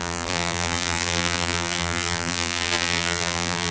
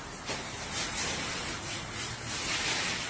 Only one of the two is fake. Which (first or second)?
first